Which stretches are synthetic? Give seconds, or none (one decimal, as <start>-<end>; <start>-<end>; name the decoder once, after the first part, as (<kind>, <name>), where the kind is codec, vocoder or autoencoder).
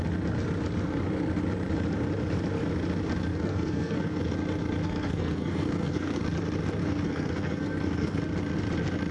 3.3-4.2 (codec, SNAC); 4.8-6.2; 6.8-8.2